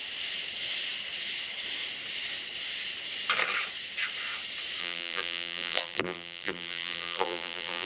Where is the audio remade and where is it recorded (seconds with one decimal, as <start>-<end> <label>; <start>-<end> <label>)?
0.0-4.8 recorded; 4.8-7.9 remade